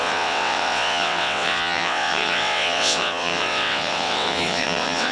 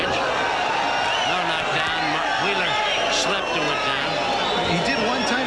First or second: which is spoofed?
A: first